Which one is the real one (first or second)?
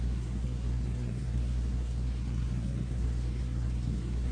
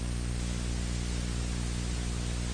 second